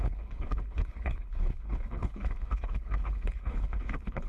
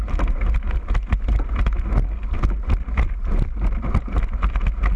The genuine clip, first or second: second